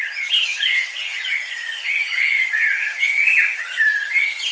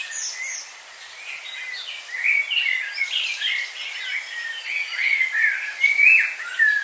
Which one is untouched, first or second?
second